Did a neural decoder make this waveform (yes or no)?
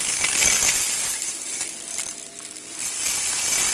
no